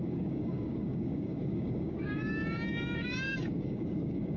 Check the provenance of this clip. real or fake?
fake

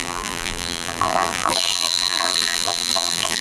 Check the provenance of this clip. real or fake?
fake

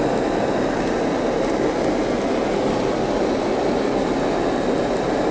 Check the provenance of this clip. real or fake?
real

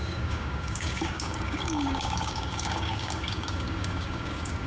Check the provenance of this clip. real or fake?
fake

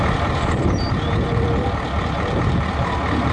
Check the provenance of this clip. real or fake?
fake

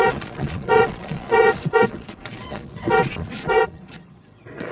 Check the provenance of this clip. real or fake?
fake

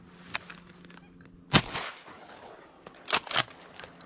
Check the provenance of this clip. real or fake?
real